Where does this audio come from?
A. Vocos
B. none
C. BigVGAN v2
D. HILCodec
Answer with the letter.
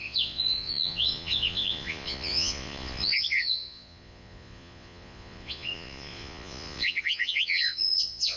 A